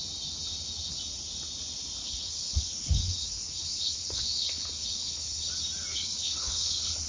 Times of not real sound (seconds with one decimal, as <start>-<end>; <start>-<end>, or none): 2.0-5.5; 5.9-7.1